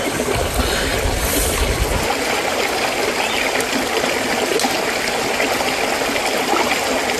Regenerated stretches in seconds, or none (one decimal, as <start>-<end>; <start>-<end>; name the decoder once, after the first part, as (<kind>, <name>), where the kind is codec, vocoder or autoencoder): 0.9-1.8 (vocoder, BigVGAN v2); 2.5-4.5